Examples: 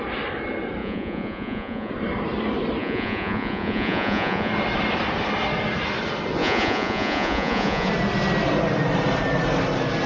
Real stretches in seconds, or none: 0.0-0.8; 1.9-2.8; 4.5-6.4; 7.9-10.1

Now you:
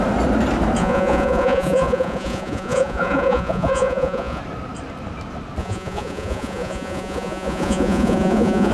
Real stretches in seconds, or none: 0.0-0.8; 4.4-5.6